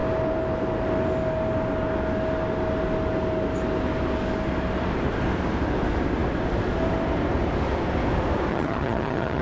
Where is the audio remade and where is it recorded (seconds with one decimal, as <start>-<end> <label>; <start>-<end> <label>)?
0.0-8.5 recorded; 8.5-9.4 remade